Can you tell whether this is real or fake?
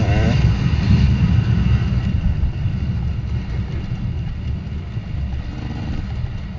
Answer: real